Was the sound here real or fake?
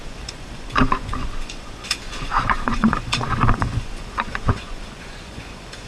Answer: fake